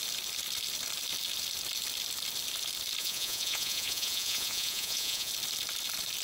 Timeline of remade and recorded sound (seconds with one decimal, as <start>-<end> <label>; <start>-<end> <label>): 0.0-3.0 recorded; 3.0-5.3 remade; 5.3-6.2 recorded

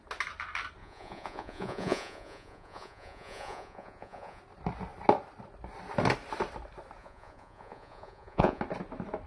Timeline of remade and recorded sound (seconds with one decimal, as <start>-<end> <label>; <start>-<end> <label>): 0.0-0.8 recorded; 0.8-4.4 remade; 4.4-7.0 recorded; 7.0-8.6 remade; 8.6-9.3 recorded

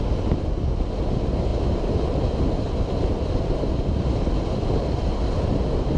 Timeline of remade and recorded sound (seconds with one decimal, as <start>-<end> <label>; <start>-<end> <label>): 0.0-6.0 recorded

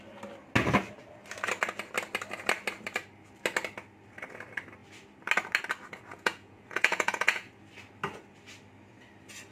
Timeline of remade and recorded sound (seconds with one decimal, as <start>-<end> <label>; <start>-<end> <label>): 0.0-6.1 recorded; 6.1-7.5 remade; 7.5-9.5 recorded

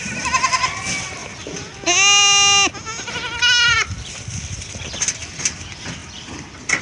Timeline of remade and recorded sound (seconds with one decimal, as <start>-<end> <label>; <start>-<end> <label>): 0.0-6.8 recorded

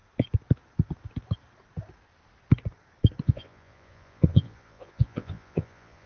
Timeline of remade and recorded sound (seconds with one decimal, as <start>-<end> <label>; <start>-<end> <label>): 0.0-3.2 recorded; 3.2-6.1 remade